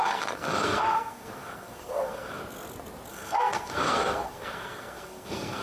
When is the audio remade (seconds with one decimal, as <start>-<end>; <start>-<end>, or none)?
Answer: 0.0-2.4; 3.1-5.6